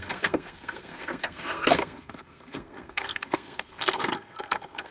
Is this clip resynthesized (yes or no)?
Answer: yes